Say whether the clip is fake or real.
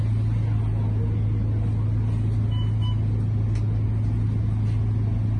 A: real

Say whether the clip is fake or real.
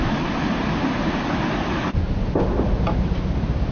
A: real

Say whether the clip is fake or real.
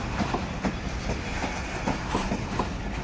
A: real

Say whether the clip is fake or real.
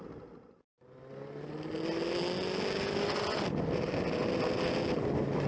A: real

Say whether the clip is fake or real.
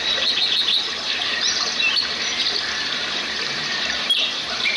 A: fake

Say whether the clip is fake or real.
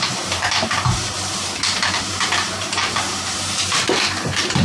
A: fake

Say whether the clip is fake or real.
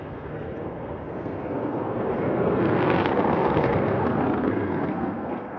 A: fake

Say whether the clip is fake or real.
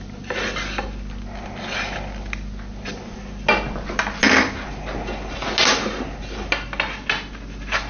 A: real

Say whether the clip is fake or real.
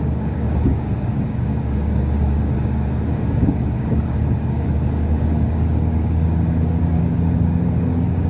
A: fake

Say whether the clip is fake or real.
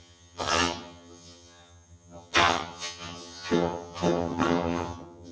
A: fake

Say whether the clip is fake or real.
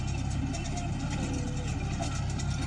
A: real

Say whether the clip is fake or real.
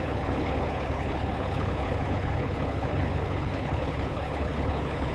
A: fake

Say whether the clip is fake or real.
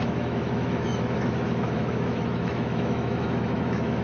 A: fake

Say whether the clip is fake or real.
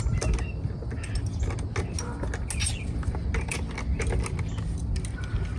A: real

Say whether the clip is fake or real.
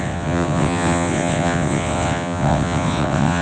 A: fake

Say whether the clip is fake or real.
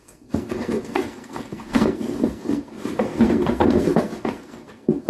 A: fake